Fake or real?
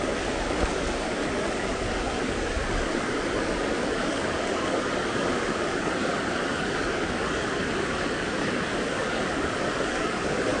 fake